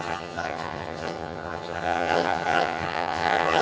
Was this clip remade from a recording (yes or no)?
yes